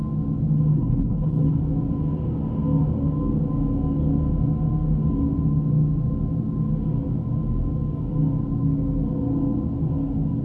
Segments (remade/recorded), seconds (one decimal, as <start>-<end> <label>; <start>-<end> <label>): 0.0-0.7 recorded; 0.7-1.5 remade; 1.5-10.4 recorded